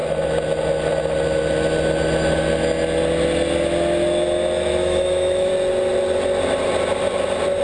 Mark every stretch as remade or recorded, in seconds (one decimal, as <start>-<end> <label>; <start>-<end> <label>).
0.0-4.8 recorded; 4.8-5.5 remade; 5.5-7.6 recorded